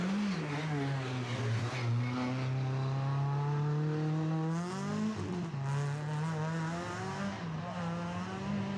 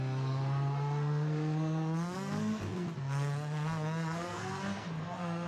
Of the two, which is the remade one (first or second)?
second